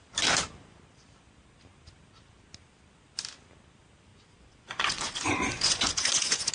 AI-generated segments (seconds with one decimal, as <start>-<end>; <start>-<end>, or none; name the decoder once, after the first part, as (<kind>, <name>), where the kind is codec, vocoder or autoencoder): 4.1-6.5 (vocoder, Vocos)